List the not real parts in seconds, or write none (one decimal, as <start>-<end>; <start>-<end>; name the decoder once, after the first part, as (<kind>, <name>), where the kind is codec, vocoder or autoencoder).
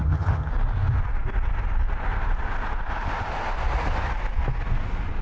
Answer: 0.0-0.5 (vocoder, HiFi-GAN)